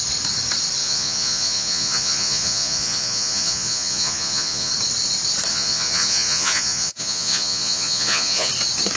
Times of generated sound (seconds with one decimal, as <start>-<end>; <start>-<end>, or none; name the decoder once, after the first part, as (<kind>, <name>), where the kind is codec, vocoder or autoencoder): 0.8-4.7 (vocoder, Vocos); 5.5-8.5